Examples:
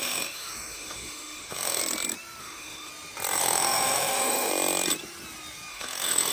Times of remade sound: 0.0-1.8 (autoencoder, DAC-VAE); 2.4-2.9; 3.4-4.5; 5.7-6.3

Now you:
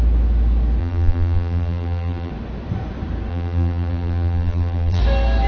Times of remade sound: 0.8-2.3 (vocoder, BigVGAN v2); 3.3-5.0

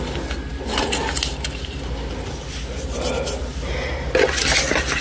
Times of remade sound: none